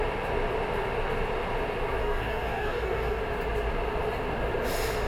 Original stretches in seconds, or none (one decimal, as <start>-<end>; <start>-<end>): 0.0-2.0; 3.2-5.1